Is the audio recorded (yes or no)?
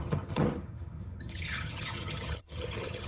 no